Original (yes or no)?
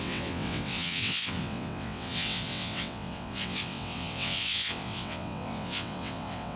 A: no